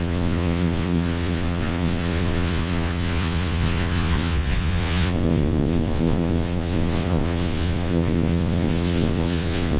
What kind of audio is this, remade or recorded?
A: remade